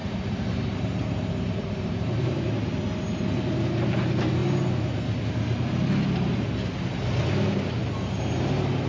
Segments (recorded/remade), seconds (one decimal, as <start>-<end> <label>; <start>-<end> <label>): 0.0-2.5 remade; 2.5-8.9 recorded